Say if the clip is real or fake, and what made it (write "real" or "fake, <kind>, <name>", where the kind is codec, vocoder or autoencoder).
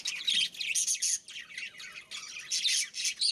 real